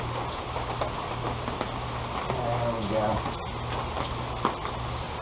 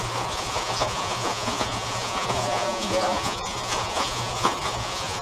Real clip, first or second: first